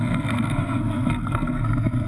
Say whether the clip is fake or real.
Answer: fake